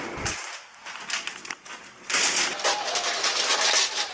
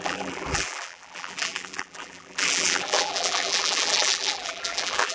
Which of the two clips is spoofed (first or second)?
second